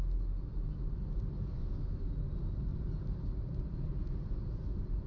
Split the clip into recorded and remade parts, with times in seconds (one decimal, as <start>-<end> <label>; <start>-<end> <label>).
0.0-2.7 recorded; 2.7-3.9 remade; 3.9-5.1 recorded